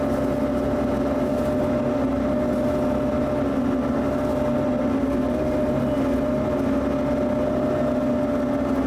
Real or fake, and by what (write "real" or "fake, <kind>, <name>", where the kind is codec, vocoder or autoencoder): real